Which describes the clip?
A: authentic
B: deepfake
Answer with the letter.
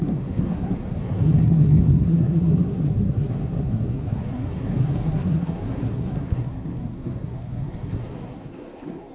B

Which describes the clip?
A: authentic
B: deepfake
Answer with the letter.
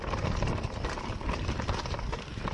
A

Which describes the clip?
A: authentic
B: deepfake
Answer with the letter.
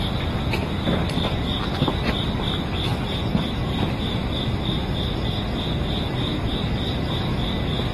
A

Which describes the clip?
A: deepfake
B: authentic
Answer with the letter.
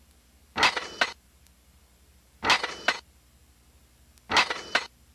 B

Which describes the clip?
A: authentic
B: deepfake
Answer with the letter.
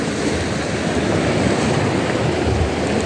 A